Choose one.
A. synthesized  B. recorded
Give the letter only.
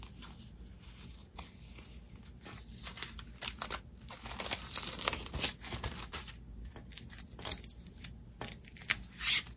B